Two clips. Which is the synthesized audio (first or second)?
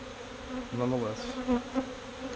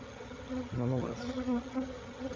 second